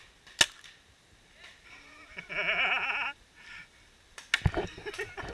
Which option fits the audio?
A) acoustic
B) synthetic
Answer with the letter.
A